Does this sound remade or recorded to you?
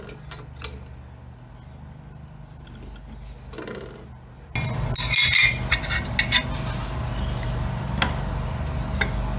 recorded